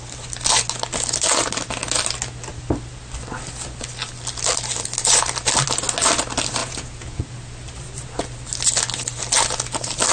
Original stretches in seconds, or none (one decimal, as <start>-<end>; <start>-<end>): 0.0-6.6; 7.3-10.1